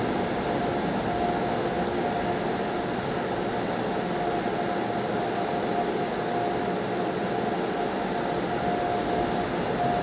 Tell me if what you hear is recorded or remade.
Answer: recorded